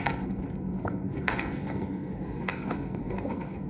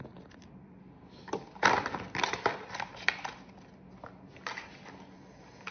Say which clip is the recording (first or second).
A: second